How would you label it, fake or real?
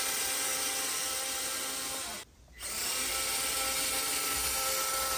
real